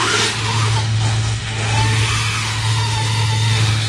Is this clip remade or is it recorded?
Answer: remade